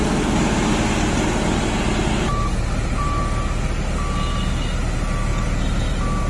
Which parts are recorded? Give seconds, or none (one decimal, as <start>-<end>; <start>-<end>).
0.0-6.3